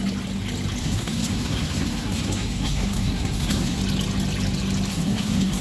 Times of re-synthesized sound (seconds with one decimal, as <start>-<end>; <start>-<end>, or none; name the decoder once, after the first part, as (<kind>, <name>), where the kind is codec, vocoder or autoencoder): 0.8-3.8 (codec, SNAC); 4.9-5.6